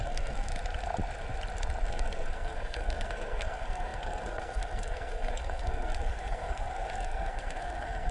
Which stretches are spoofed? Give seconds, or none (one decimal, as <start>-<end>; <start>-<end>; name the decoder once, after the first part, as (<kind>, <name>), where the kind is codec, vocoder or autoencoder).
0.0-0.5 (codec, SNAC); 1.9-8.1